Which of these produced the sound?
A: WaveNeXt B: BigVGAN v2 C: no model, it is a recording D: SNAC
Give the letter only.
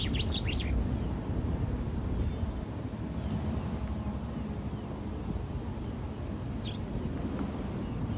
C